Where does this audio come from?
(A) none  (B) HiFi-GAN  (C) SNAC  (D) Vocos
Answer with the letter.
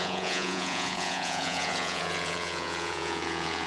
D